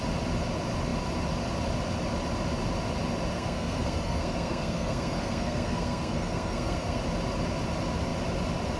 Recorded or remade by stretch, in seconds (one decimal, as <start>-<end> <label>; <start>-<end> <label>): 0.0-3.3 recorded; 3.3-7.0 remade; 7.0-8.8 recorded